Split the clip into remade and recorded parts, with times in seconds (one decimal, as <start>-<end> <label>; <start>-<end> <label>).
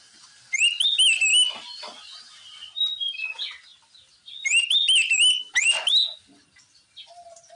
0.0-7.6 recorded